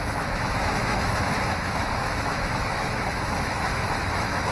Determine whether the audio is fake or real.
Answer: fake